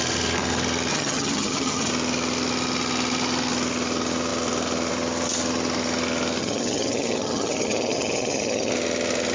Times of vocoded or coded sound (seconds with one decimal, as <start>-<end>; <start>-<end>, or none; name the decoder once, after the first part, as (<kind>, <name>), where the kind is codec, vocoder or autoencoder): 0.9-1.9 (vocoder, HiFi-GAN); 6.4-8.7